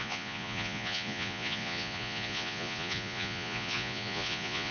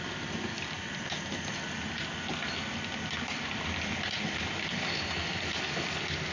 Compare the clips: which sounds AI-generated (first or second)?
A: first